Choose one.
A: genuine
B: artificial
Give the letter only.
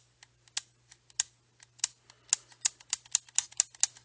A